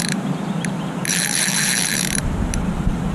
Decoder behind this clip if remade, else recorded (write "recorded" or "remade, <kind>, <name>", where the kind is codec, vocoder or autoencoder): remade, vocoder, BigVGAN v2